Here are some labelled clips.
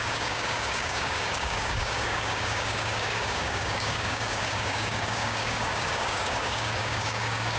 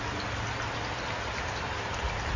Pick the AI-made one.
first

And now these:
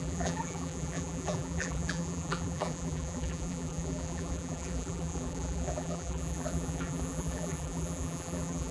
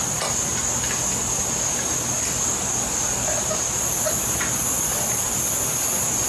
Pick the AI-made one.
first